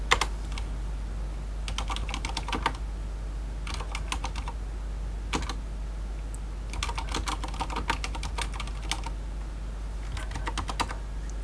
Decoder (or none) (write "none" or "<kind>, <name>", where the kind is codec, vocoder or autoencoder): none